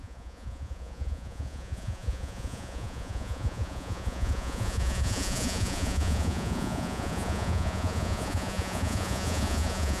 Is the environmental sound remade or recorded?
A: remade